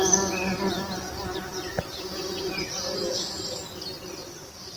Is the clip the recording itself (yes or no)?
yes